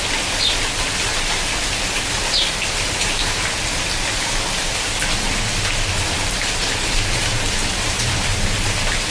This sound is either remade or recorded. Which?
recorded